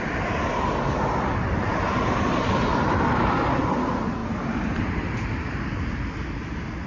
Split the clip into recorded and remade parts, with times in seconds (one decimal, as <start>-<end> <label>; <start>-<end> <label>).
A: 0.0-6.9 recorded